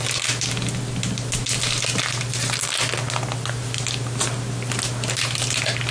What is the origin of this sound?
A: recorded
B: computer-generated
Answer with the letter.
A